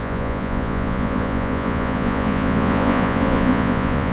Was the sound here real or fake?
fake